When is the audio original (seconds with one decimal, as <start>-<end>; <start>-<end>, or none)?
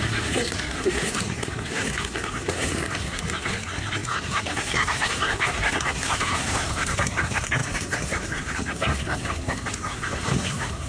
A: none